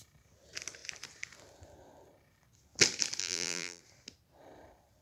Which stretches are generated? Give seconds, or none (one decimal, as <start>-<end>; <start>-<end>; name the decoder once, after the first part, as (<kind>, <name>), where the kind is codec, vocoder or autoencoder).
3.2-3.8 (vocoder, BigVGAN v2)